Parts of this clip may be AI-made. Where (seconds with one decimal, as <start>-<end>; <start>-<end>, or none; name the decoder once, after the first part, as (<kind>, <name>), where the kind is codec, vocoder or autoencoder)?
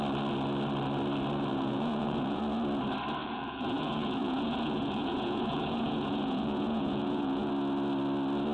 1.5-2.4 (vocoder, Vocos); 3.2-7.5